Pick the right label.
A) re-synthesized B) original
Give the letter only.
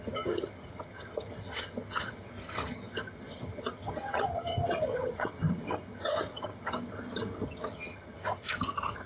A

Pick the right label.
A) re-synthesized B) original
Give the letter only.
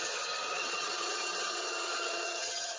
A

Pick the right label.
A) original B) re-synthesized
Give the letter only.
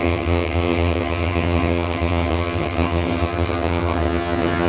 B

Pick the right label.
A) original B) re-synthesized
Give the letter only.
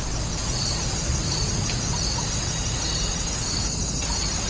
A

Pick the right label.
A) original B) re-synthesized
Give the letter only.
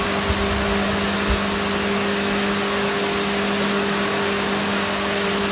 A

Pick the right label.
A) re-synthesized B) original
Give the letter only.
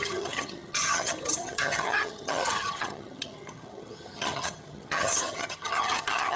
A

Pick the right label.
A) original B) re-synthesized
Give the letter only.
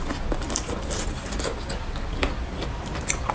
A